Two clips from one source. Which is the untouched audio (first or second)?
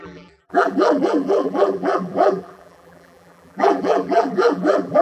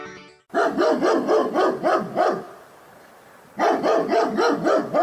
second